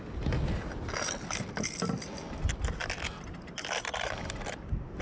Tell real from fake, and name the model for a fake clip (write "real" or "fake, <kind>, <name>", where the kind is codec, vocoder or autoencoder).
real